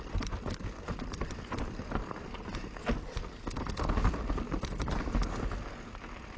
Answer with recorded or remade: recorded